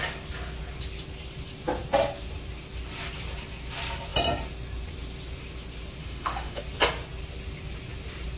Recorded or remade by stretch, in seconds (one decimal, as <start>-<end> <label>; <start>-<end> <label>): 0.0-6.0 recorded; 6.0-6.6 remade; 6.6-8.4 recorded